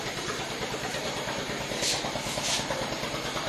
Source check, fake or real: fake